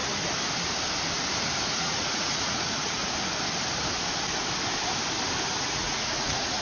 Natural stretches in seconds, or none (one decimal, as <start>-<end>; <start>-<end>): 0.0-1.7; 3.0-5.6